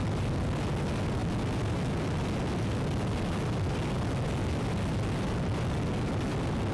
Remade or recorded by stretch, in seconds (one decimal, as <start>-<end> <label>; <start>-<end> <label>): 0.0-6.7 recorded